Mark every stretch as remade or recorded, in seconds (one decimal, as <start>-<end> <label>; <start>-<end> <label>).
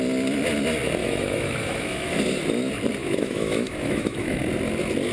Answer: 0.0-1.0 recorded; 1.0-2.2 remade; 2.2-3.0 recorded; 3.0-4.4 remade; 4.4-5.1 recorded